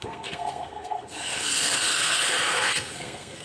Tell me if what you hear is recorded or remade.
remade